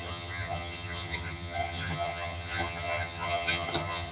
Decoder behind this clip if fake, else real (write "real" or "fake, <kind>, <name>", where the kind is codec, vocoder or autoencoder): fake, vocoder, HiFi-GAN